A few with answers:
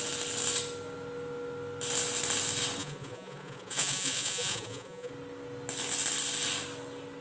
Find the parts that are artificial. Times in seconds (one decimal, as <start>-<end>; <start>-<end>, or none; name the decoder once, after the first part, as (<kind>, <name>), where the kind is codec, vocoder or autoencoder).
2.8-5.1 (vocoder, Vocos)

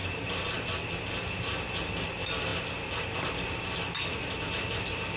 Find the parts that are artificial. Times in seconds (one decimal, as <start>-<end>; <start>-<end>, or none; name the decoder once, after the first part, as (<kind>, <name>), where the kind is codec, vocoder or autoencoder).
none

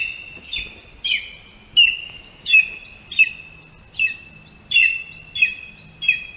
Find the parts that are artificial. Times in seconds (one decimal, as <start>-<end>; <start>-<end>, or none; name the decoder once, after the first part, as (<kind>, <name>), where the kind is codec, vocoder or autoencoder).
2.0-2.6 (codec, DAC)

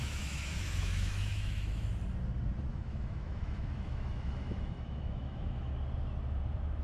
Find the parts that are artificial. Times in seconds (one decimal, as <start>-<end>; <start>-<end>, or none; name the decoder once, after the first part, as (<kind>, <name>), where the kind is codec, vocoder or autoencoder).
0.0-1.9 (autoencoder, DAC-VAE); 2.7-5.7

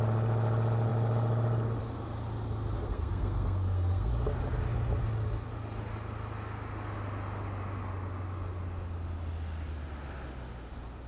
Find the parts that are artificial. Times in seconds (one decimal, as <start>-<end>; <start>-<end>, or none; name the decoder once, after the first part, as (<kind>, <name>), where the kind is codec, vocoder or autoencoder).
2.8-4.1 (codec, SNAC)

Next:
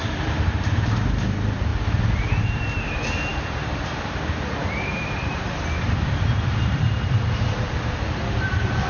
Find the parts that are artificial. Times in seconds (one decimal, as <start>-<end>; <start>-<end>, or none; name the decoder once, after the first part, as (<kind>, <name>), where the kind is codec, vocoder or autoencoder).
0.0-1.7 (vocoder, BigVGAN v2); 2.4-8.9

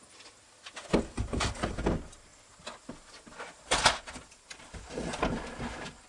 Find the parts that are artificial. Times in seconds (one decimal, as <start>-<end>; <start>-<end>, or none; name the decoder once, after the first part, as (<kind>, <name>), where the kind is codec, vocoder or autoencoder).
none